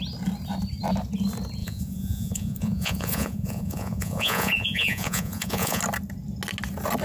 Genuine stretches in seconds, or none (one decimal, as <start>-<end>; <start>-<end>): 0.0-1.6; 5.8-7.0